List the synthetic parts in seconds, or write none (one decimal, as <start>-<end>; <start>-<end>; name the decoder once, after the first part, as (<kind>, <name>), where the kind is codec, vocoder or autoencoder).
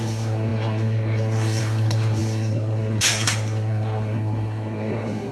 0.0-5.3 (codec, SNAC)